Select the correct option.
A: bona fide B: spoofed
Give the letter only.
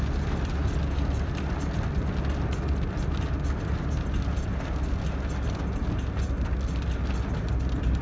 A